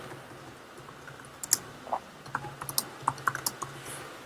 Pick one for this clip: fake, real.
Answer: real